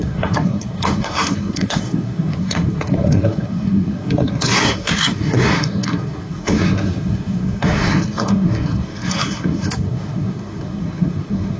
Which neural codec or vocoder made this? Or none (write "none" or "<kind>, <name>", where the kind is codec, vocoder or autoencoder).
codec, SNAC